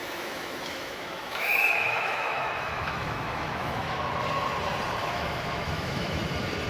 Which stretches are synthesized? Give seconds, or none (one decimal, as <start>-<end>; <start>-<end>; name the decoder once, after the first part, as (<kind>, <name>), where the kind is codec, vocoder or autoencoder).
0.0-4.0 (autoencoder, DAC-VAE); 5.0-6.2